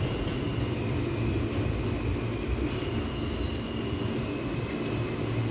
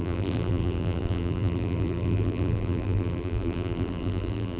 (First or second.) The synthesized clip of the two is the second